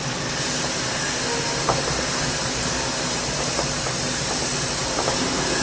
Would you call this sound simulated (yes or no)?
no